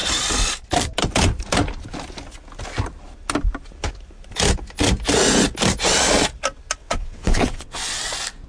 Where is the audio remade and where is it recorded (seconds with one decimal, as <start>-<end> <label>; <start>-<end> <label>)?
0.0-6.8 recorded; 6.8-8.0 remade; 8.0-8.5 recorded